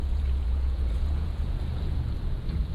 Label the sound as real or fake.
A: fake